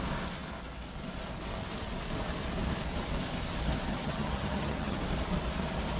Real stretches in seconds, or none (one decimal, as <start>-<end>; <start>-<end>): 0.0-3.9; 5.0-6.0